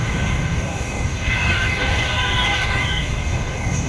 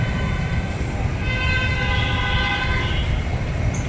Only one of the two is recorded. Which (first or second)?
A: second